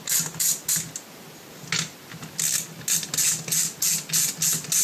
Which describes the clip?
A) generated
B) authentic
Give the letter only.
B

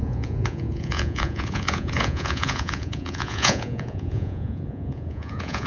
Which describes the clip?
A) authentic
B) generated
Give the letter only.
B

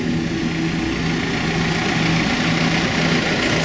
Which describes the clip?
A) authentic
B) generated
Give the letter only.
A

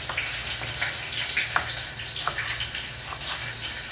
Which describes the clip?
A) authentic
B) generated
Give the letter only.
B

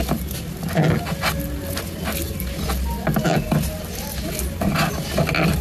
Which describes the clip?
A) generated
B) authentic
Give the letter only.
B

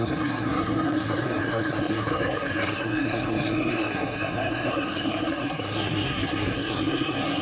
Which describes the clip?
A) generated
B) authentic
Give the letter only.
A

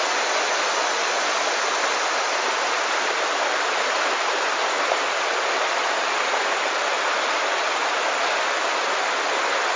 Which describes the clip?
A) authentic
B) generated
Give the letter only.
A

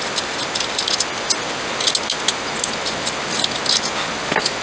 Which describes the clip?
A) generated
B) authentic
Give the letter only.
B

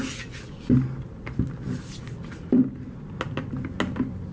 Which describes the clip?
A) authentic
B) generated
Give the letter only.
A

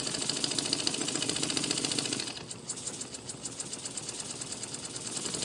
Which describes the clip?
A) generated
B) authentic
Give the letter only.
B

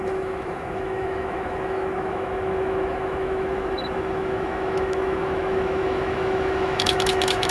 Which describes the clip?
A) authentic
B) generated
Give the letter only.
B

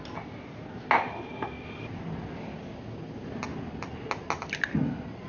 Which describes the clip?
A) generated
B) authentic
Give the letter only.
B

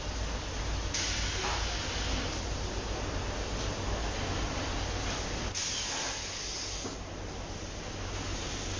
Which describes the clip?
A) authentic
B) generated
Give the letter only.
A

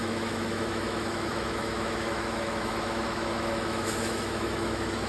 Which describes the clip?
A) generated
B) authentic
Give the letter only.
A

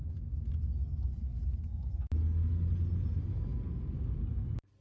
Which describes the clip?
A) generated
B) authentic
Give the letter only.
B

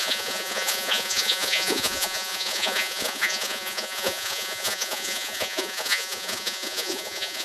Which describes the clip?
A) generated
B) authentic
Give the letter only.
A